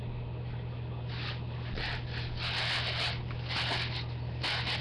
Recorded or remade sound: recorded